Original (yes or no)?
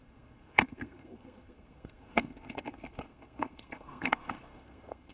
no